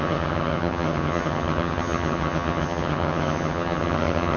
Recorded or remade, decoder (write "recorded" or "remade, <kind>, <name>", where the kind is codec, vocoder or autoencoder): remade, vocoder, HiFi-GAN